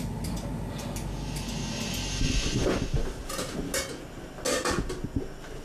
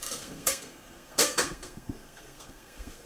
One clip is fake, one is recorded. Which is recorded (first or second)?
first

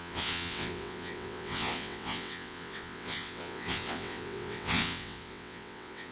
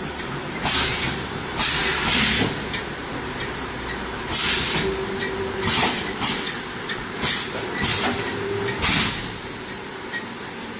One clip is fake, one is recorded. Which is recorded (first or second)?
second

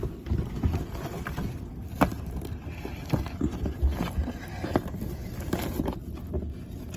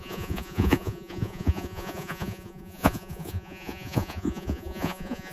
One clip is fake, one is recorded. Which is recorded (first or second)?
first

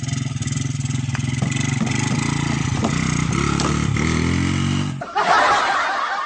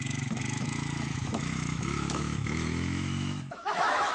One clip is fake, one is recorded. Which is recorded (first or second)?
first